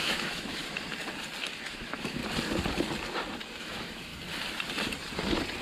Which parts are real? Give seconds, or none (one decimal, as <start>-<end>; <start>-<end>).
0.6-1.7; 2.2-3.6; 4.1-5.6